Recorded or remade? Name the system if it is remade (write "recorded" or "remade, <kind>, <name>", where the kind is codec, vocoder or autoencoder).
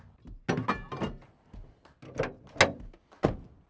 recorded